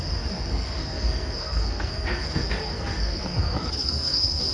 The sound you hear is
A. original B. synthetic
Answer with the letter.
B